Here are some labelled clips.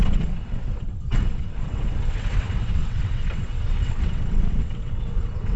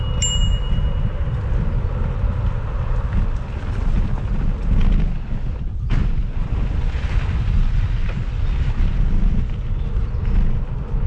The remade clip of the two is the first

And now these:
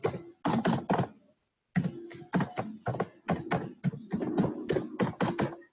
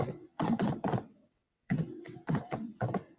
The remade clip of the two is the second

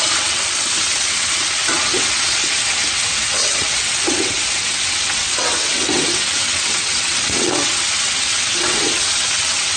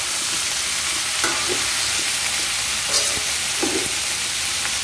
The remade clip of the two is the first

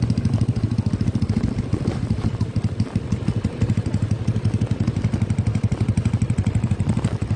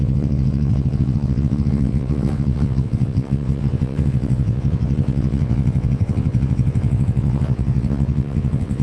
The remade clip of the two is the second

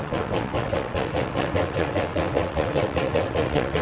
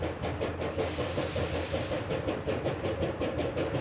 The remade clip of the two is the first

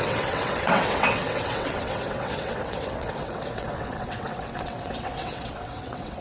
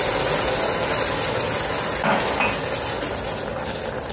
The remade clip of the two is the first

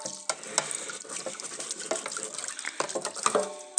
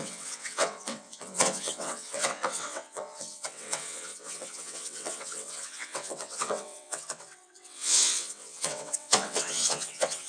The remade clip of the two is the second